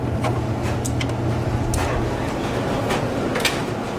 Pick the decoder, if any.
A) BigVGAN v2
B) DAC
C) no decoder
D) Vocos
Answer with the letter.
C